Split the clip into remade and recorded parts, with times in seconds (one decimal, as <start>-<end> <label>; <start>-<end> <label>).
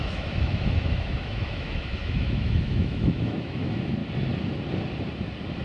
0.0-4.0 remade; 4.0-5.6 recorded